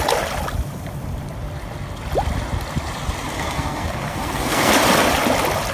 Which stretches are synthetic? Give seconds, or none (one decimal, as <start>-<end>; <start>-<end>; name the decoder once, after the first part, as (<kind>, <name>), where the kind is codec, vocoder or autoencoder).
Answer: 3.3-4.7 (codec, SNAC)

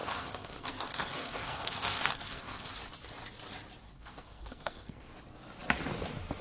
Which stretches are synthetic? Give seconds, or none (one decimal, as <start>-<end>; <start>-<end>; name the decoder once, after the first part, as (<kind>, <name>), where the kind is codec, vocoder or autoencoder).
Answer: 0.0-2.7 (codec, SNAC); 3.8-5.1

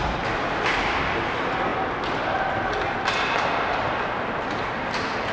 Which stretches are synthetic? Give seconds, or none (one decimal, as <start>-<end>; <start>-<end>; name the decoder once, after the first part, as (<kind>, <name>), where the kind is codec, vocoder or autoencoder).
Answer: none

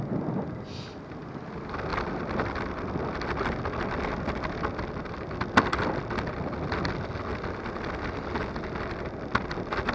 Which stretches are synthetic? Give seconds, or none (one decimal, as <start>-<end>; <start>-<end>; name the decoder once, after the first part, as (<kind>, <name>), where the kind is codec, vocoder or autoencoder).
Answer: none

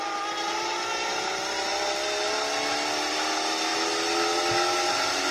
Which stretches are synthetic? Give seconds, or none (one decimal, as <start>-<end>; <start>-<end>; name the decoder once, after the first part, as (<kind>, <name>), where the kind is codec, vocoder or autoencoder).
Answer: none

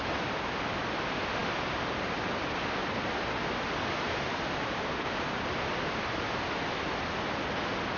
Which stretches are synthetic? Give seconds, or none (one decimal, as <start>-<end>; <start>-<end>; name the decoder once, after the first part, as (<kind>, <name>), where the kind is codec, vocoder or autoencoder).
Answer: none